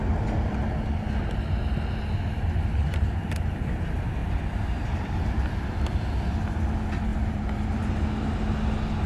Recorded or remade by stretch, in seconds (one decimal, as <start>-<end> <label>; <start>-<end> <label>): 0.0-2.9 recorded; 2.9-3.7 remade; 3.7-4.2 recorded; 4.2-5.3 remade; 5.3-7.1 recorded; 7.1-7.9 remade; 7.9-9.1 recorded